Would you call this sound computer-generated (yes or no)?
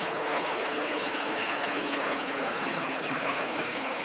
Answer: yes